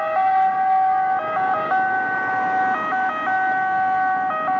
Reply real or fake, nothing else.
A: real